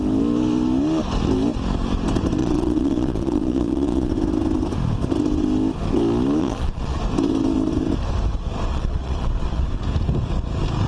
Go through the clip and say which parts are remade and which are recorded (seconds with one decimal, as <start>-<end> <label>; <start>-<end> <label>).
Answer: 0.0-2.4 recorded; 2.4-4.1 remade; 4.1-6.4 recorded; 6.4-7.0 remade; 7.0-8.7 recorded; 8.7-9.7 remade; 9.7-10.9 recorded